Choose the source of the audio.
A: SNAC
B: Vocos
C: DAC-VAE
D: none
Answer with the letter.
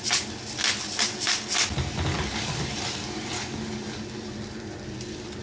D